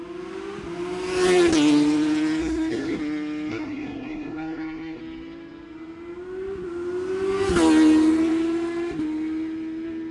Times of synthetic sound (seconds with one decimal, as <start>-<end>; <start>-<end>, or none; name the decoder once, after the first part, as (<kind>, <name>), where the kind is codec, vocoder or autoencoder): 2.4-3.0 (codec, SNAC); 3.5-5.0